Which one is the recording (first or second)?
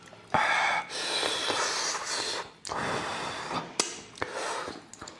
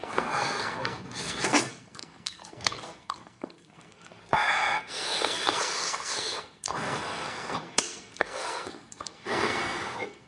first